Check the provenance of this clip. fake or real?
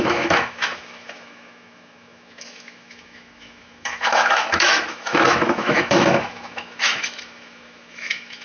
fake